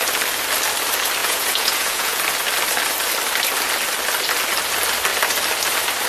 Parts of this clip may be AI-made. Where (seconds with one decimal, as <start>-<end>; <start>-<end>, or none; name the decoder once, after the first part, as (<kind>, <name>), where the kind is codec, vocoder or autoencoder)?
1.2-2.2 (vocoder, Vocos)